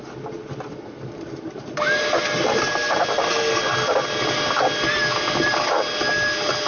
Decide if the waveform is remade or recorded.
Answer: recorded